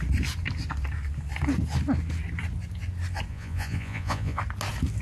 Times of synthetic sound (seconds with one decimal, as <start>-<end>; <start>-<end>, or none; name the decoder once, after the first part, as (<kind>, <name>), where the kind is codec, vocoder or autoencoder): 3.3-4.4 (vocoder, Vocos)